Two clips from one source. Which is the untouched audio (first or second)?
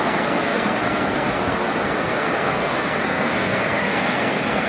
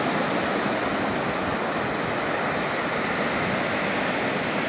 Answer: second